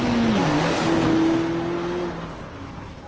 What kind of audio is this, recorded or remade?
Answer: recorded